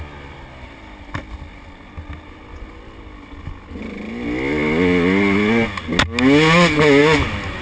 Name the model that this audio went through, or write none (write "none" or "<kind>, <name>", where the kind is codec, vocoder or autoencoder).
none